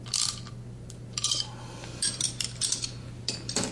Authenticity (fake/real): real